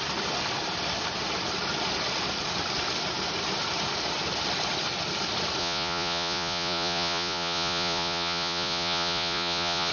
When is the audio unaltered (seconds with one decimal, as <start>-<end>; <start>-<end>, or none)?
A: 0.0-5.6